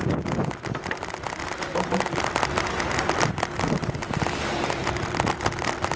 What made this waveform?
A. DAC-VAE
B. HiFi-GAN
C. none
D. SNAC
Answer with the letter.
C